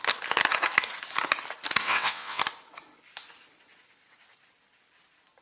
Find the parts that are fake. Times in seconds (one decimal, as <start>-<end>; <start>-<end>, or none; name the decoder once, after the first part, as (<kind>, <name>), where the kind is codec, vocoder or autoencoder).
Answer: 1.8-2.4 (vocoder, WaveNeXt)